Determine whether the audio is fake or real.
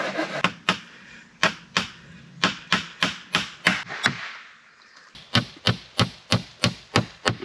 real